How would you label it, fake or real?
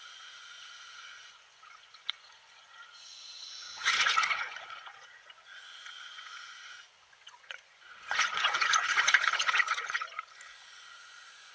fake